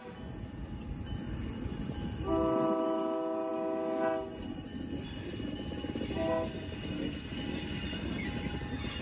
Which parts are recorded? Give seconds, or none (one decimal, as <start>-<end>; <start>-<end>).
0.0-0.6; 1.4-9.0